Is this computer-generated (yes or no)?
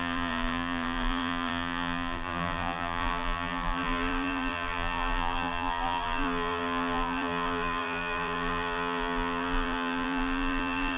yes